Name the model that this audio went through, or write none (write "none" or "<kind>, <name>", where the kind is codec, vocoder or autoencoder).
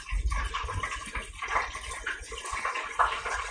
none